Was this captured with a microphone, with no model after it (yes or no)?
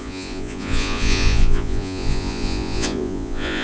no